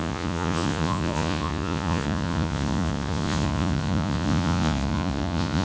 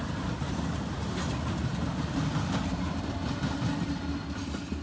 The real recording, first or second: second